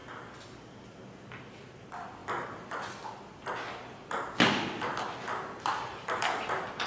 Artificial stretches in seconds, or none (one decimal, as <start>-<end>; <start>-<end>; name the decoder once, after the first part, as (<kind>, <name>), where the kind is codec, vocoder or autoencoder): none